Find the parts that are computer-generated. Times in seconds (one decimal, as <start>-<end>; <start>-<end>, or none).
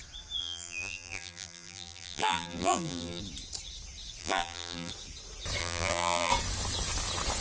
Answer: 0.4-3.2; 4.2-4.9; 5.6-6.3